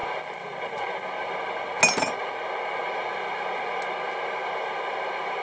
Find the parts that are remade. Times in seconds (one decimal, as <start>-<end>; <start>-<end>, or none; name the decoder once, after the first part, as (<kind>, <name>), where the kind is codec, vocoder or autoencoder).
none